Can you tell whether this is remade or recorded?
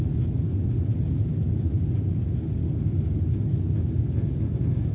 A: recorded